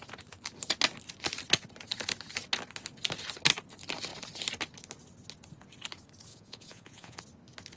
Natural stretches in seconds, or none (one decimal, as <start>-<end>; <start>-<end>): 0.0-6.3; 7.2-7.8